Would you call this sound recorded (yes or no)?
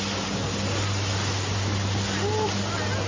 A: yes